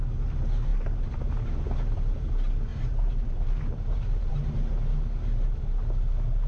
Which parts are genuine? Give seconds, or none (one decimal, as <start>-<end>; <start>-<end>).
0.0-0.7; 1.3-2.7; 4.3-6.5